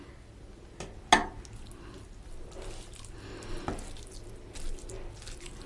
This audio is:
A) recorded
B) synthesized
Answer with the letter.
A